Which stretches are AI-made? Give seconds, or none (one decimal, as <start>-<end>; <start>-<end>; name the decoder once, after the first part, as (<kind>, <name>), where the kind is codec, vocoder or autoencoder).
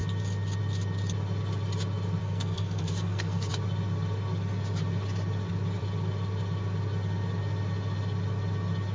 2.2-3.5 (codec, SNAC)